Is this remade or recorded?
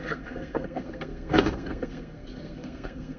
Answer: remade